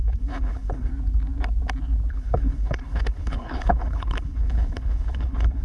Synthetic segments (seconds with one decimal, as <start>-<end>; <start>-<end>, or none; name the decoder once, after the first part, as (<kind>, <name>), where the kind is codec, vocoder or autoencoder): 0.0-0.9 (codec, HILCodec); 2.1-5.6